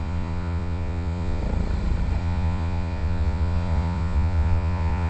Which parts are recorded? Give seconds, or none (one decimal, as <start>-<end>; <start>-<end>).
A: 1.4-2.2